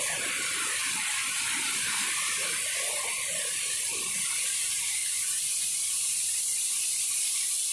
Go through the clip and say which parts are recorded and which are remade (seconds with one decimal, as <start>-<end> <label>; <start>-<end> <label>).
0.0-5.0 recorded; 5.0-5.9 remade; 5.9-7.7 recorded